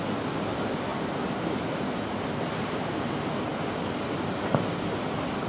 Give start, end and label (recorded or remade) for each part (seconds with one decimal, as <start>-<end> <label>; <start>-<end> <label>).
0.0-5.5 recorded